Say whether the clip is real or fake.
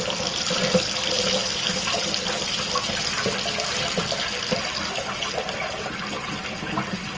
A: real